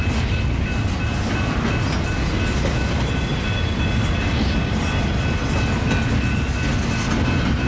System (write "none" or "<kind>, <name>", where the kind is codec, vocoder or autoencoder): none